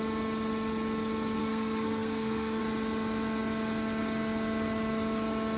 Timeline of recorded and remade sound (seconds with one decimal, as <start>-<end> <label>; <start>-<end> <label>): 0.0-1.4 recorded; 1.4-2.6 remade; 2.6-5.6 recorded